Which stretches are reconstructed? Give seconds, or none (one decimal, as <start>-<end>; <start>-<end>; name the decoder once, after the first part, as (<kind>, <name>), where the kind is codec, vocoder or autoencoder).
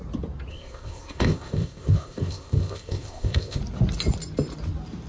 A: 0.5-3.6 (codec, ZipCodec)